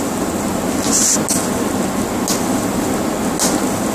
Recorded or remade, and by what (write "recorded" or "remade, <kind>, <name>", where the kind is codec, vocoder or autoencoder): recorded